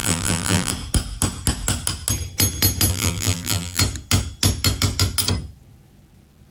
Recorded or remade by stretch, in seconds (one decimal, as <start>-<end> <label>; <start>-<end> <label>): 0.0-0.7 remade; 0.7-2.9 recorded; 2.9-3.8 remade; 3.8-6.5 recorded